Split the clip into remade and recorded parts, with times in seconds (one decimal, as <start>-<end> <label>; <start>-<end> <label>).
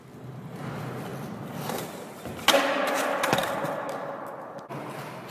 0.0-5.3 recorded